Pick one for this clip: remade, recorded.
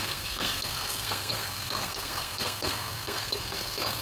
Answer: remade